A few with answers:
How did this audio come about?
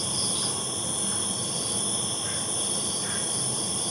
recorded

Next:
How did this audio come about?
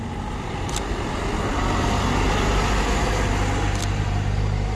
recorded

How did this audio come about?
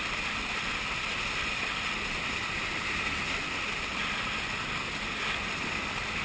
recorded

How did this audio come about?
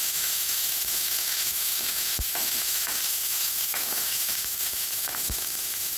remade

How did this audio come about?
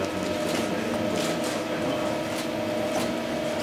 recorded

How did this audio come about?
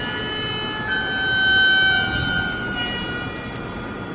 recorded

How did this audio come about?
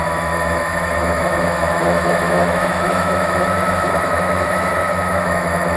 remade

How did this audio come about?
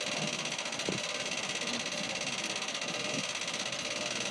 recorded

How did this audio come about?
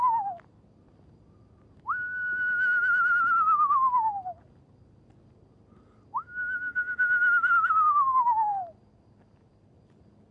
recorded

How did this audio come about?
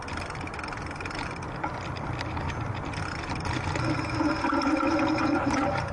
recorded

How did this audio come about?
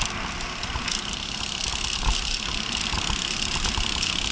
recorded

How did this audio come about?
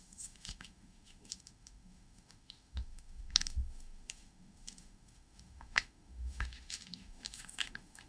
remade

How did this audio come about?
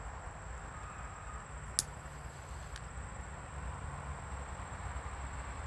recorded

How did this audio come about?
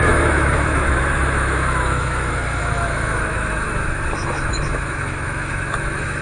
remade